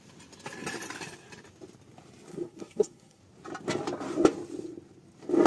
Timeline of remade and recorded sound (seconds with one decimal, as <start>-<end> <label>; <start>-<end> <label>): 0.0-2.3 recorded; 2.3-3.2 remade; 3.2-5.5 recorded